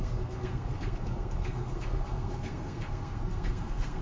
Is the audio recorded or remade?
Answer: remade